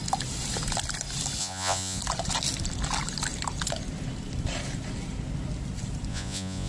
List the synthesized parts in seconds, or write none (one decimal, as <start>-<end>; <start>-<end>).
1.4-2.0; 6.1-6.7